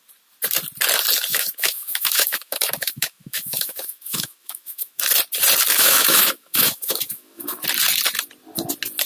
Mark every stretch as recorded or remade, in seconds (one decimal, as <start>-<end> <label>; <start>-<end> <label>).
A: 0.0-1.3 recorded; 1.3-5.0 remade; 5.0-5.7 recorded; 5.7-7.6 remade; 7.6-9.1 recorded